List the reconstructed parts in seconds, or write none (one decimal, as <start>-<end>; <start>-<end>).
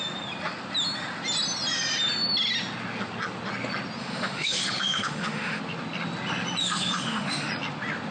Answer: 4.0-5.6; 6.6-7.5